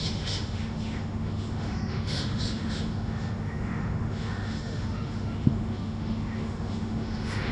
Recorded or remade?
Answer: remade